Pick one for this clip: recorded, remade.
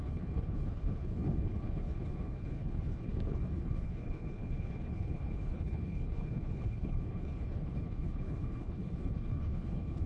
remade